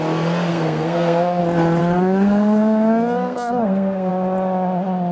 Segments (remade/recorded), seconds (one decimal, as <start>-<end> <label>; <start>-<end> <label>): 0.0-0.5 recorded; 0.5-1.4 remade; 1.4-1.8 recorded; 1.8-4.1 remade; 4.1-5.1 recorded